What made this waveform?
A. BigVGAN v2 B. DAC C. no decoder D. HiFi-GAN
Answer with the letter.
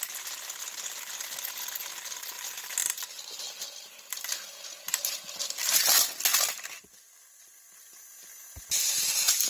C